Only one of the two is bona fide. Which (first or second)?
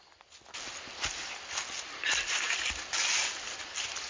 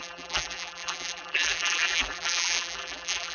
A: first